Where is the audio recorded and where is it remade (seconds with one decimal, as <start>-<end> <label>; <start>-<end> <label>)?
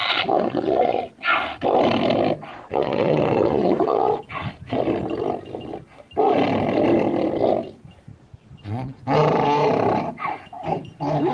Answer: 0.0-1.0 remade; 1.0-2.5 recorded; 2.5-4.2 remade; 4.2-8.1 recorded; 8.1-9.0 remade; 9.0-11.3 recorded